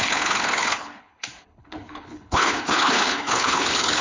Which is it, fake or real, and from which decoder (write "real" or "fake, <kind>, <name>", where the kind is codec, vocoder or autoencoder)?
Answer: fake, codec, HILCodec